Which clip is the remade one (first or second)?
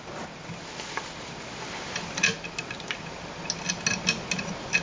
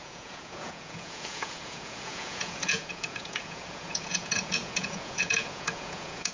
second